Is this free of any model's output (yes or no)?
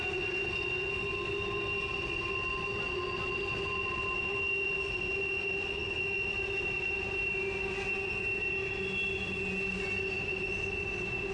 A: yes